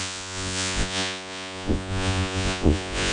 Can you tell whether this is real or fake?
fake